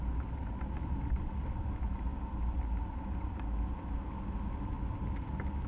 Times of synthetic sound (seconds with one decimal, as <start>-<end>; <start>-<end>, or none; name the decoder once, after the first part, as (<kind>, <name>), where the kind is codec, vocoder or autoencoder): none